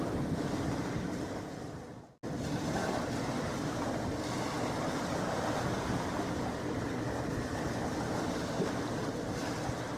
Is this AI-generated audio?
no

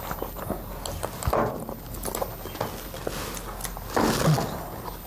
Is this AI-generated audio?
no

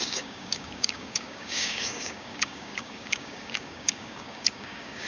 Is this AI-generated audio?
yes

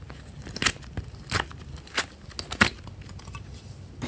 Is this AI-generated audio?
no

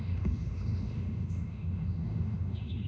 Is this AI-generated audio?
yes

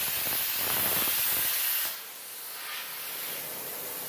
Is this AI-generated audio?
no